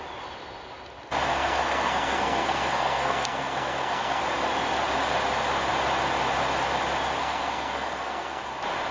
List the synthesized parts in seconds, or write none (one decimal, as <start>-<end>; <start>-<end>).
1.3-4.2; 7.2-8.4